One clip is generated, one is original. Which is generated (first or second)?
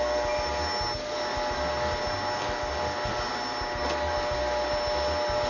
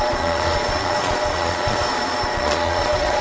second